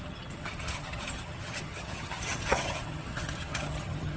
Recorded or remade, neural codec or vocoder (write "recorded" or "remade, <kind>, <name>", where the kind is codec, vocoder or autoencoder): remade, vocoder, HiFi-GAN